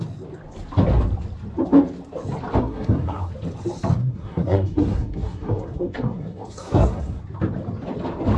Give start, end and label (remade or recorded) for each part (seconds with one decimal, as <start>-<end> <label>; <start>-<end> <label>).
0.0-2.6 recorded; 2.6-3.3 remade; 3.3-4.0 recorded; 4.0-7.2 remade; 7.2-8.4 recorded